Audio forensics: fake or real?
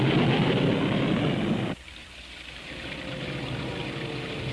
real